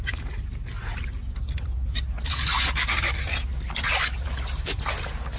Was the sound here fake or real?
real